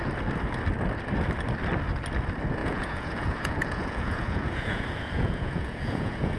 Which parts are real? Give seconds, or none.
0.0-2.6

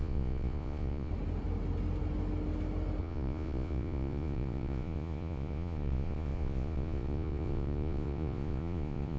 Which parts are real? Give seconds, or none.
1.1-3.0

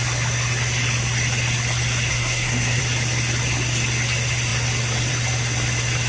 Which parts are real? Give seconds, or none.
0.0-2.1; 2.8-6.1

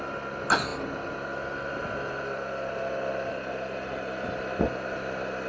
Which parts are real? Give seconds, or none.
0.0-5.5

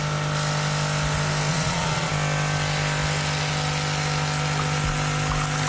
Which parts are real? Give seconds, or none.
0.0-1.5; 2.1-5.7

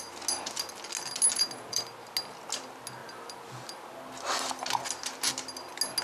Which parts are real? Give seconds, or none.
0.0-1.3; 1.9-3.0; 3.9-6.0

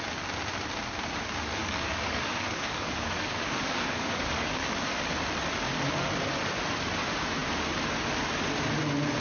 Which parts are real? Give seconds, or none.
0.0-1.6; 5.0-9.2

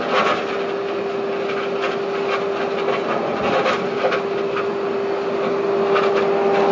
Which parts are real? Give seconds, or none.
0.0-6.7